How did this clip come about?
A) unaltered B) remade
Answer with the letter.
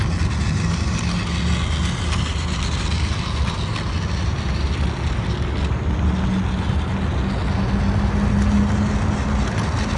A